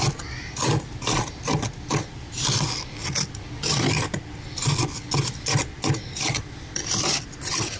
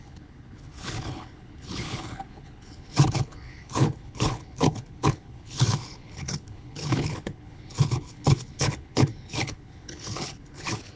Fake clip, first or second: second